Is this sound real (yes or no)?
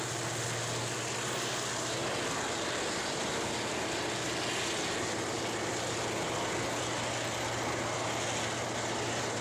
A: yes